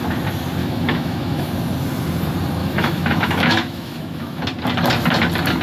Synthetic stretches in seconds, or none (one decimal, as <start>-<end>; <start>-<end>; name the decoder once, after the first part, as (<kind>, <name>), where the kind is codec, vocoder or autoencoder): 0.6-1.5 (autoencoder, DAC-VAE); 2.6-4.4